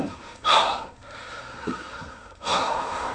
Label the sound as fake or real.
fake